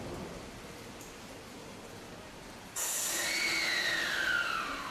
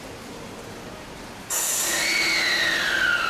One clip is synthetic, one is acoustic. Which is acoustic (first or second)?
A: second